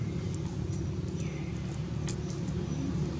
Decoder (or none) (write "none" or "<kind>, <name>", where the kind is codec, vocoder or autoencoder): none